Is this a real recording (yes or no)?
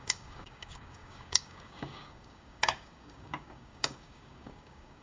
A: no